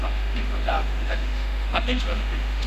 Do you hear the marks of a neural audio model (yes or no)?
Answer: yes